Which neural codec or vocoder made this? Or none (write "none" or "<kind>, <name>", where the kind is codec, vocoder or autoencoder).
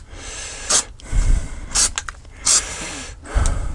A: none